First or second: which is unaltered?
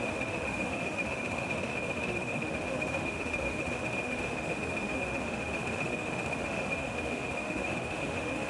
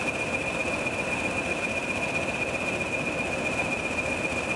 second